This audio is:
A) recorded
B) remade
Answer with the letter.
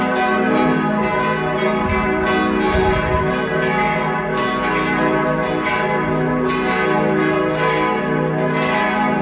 A